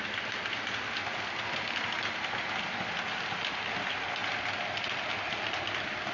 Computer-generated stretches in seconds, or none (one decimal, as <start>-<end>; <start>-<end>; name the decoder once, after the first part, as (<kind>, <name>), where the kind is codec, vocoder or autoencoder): none